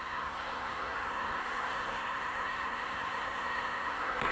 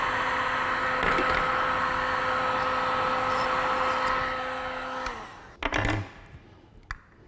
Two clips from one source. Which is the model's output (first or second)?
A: first